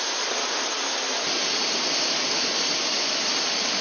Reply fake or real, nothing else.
real